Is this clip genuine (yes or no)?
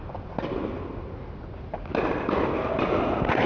yes